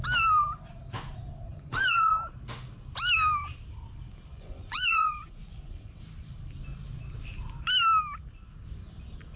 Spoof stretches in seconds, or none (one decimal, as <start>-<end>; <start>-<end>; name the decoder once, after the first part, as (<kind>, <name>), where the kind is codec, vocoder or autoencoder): 1.5-2.1 (vocoder, Vocos); 4.3-5.9